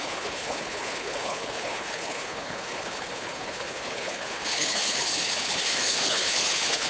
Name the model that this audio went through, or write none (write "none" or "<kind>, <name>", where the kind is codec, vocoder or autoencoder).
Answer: codec, HILCodec